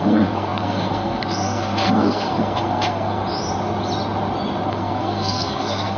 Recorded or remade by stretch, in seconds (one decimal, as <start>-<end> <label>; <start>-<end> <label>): 0.0-3.2 remade; 3.2-4.7 recorded; 4.7-6.0 remade